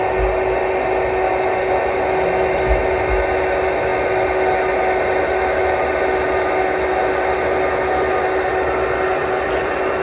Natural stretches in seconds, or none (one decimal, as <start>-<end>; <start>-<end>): 0.0-10.0